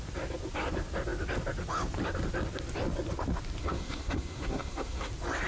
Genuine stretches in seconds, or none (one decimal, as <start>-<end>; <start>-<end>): 0.0-3.6; 5.1-5.5